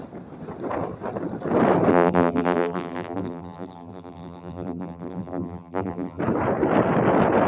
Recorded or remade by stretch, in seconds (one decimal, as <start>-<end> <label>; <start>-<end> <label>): 0.0-1.9 recorded; 1.9-6.2 remade; 6.2-7.5 recorded